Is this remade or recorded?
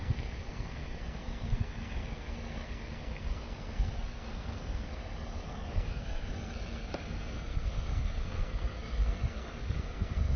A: remade